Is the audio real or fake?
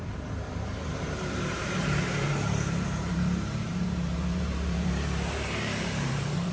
fake